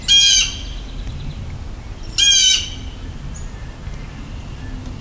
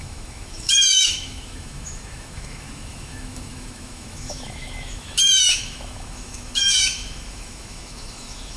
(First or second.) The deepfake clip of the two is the second